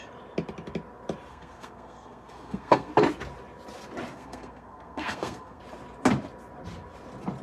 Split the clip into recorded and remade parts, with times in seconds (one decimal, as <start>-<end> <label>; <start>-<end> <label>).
0.0-1.3 recorded; 1.3-2.9 remade; 2.9-4.1 recorded; 4.1-5.6 remade; 5.6-7.4 recorded